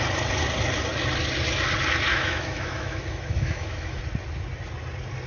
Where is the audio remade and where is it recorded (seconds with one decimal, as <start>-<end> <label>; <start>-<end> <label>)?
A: 0.0-2.1 recorded; 2.1-4.0 remade; 4.0-5.3 recorded